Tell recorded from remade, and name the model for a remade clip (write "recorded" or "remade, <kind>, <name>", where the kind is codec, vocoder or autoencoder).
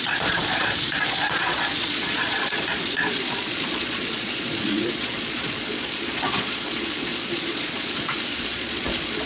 remade, vocoder, Vocos